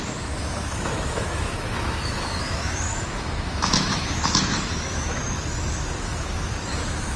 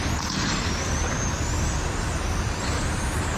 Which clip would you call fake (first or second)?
first